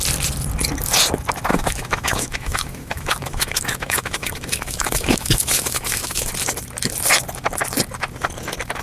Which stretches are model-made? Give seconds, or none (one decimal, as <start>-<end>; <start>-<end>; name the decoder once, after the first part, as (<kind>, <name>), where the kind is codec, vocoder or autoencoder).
1.5-6.3 (autoencoder, DAC-VAE)